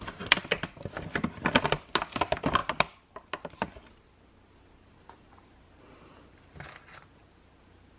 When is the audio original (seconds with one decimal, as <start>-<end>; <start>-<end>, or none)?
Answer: 0.0-8.0